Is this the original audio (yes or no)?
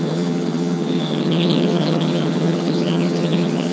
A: no